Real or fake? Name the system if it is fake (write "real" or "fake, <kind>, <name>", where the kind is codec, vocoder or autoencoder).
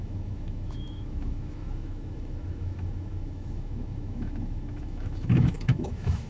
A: fake, autoencoder, DAC-VAE